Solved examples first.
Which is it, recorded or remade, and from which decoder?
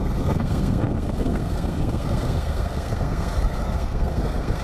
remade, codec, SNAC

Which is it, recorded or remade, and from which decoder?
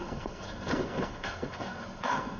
remade, codec, SNAC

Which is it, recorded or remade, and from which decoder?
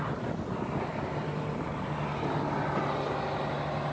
recorded